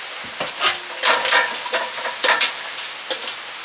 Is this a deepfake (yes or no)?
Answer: no